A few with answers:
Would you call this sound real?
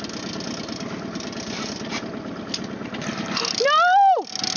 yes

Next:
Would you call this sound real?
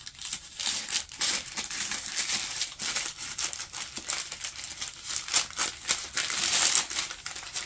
yes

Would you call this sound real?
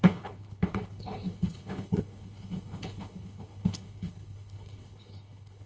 no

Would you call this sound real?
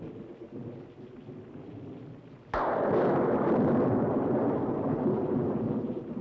yes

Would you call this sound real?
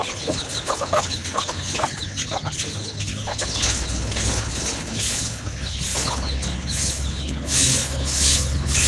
no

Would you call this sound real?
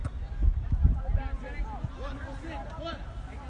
yes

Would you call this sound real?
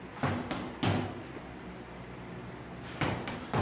yes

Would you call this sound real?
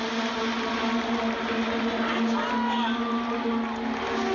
yes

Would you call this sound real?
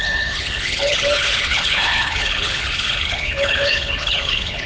no